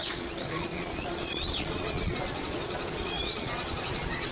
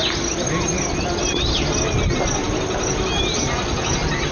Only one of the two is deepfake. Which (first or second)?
first